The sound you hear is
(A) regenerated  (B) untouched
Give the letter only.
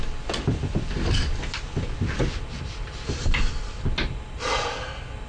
B